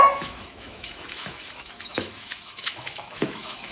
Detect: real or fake fake